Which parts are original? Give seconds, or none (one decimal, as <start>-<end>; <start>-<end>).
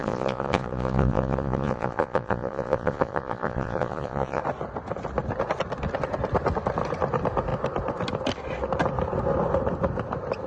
4.4-10.5